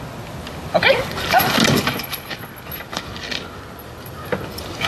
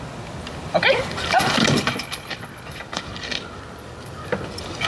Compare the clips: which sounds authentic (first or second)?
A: first